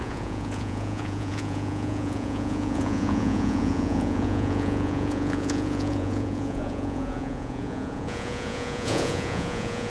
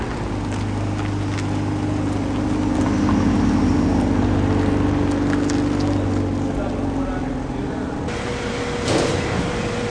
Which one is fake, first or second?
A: first